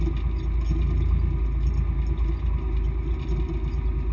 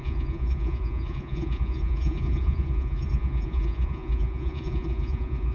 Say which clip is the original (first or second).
first